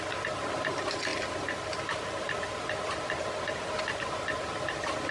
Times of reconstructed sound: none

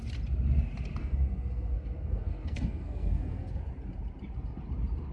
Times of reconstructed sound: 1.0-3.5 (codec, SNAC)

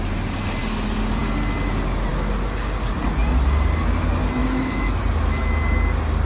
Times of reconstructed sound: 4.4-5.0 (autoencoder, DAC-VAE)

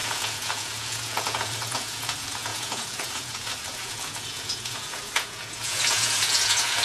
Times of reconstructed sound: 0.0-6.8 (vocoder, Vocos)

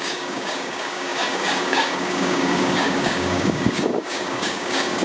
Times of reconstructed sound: 0.0-5.0 (codec, DAC)

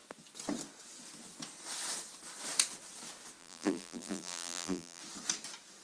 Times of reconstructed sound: 3.4-5.0 (vocoder, BigVGAN v2)